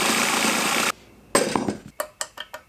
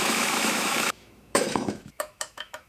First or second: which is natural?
first